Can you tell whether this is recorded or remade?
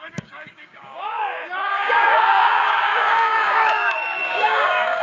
remade